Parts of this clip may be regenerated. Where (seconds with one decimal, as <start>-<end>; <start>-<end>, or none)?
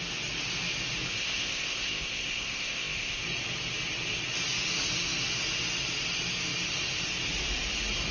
1.1-3.2